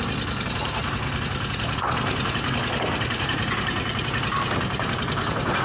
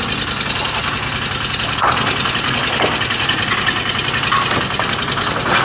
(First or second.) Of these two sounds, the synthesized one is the first